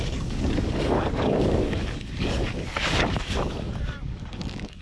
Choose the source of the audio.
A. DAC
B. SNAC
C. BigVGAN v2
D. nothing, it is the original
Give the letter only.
A